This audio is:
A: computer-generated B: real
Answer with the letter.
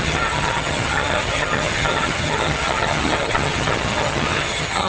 A